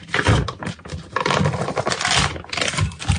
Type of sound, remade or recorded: recorded